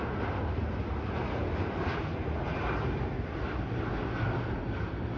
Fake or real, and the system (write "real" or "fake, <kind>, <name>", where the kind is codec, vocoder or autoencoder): real